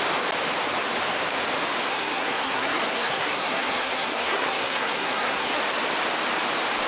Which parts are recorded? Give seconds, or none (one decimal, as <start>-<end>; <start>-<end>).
0.0-1.9; 5.6-6.9